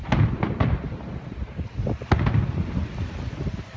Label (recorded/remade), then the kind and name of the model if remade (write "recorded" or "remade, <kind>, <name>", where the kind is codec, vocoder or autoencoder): recorded